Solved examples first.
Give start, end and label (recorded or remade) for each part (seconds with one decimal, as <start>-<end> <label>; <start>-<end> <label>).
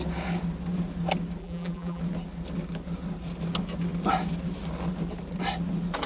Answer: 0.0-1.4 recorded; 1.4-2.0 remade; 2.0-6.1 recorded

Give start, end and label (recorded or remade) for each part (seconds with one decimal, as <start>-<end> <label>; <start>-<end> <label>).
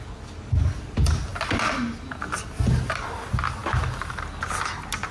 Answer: 0.0-5.1 recorded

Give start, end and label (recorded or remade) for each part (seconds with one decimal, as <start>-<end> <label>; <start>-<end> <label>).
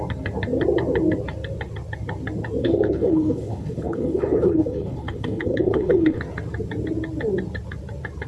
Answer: 0.0-2.6 recorded; 2.6-6.2 remade; 6.2-8.3 recorded